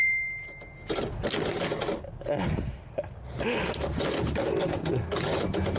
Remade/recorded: recorded